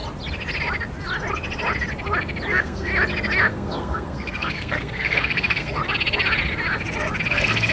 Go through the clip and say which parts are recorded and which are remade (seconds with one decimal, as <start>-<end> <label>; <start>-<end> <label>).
0.0-2.5 recorded; 2.5-2.9 remade; 2.9-3.5 recorded; 3.5-5.8 remade; 5.8-7.3 recorded; 7.3-7.7 remade